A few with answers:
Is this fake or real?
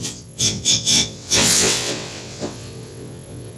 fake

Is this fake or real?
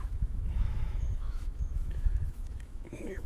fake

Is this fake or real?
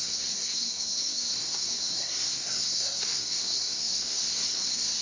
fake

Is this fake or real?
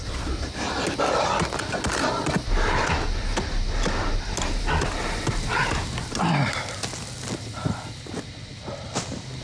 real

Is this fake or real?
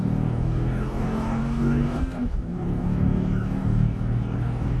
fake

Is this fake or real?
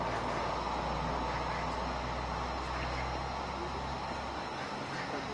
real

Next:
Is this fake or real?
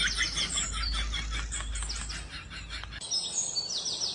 real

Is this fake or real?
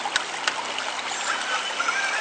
real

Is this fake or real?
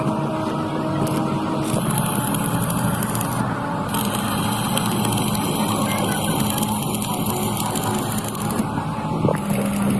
real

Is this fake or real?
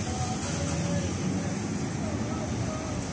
real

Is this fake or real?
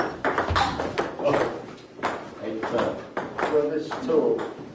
real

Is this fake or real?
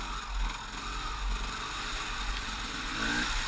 real